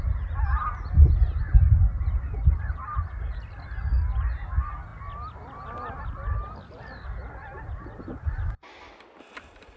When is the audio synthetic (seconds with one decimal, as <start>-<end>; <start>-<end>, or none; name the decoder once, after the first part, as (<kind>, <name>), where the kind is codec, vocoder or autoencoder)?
none